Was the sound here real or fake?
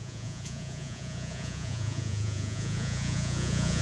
fake